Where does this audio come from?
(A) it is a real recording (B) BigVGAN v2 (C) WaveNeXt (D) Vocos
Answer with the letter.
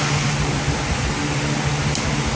A